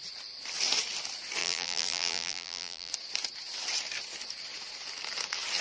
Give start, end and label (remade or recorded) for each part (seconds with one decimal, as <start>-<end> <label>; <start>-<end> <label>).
0.0-1.4 recorded; 1.4-2.9 remade; 2.9-5.6 recorded